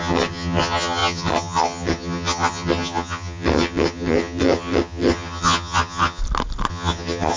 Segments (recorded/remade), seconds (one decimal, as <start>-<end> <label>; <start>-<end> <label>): 0.0-6.2 remade; 6.2-6.7 recorded; 6.7-7.4 remade